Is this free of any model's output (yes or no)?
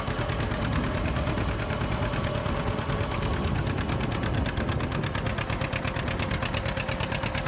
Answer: yes